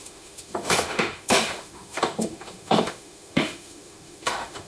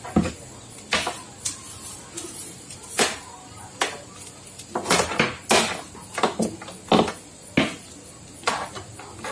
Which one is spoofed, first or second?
first